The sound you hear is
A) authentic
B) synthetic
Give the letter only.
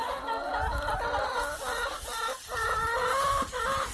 A